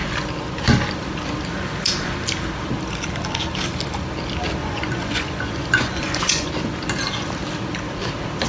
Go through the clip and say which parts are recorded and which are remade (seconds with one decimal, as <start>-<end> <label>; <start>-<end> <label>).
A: 0.0-4.6 recorded; 4.6-6.5 remade; 6.5-8.5 recorded